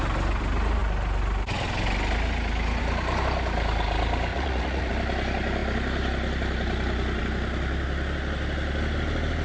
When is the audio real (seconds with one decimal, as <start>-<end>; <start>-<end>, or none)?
0.0-4.3; 4.9-9.4